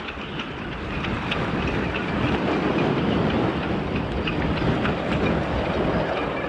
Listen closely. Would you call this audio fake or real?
real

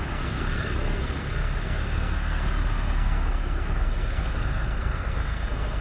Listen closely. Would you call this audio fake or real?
fake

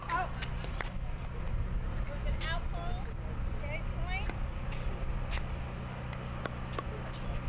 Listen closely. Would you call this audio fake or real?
real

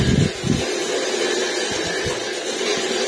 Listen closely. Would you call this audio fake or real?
real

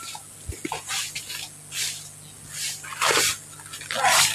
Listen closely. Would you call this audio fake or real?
real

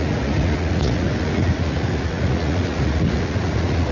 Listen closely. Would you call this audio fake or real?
fake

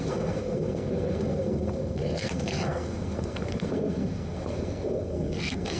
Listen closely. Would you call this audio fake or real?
fake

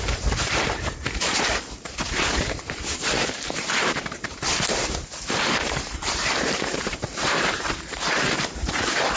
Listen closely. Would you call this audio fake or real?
fake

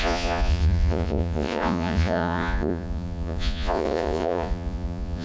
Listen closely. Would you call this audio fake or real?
fake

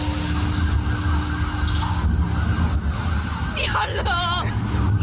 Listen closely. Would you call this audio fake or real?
real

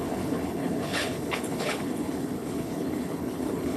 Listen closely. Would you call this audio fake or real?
fake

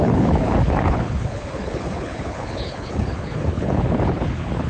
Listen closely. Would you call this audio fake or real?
fake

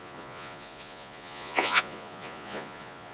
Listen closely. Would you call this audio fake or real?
fake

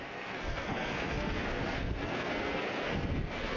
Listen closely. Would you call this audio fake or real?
fake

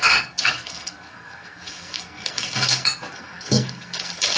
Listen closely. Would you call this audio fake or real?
fake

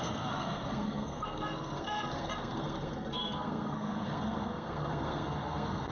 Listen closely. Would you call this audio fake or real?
fake